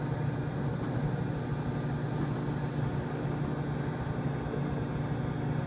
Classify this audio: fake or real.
real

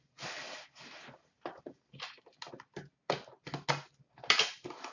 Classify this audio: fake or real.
real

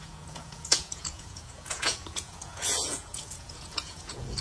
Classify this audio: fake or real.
fake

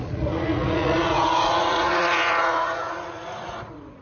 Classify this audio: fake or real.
fake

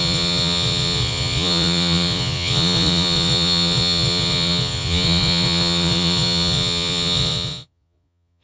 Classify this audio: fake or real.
fake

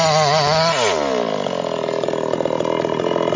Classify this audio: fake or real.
real